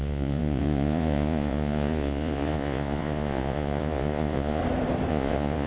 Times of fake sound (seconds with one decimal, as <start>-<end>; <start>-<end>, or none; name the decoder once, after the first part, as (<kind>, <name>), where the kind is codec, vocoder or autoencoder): 0.0-4.6 (vocoder, Vocos); 5.1-5.7